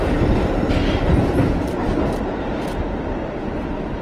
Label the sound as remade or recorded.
recorded